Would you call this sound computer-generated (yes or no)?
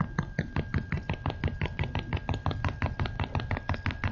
no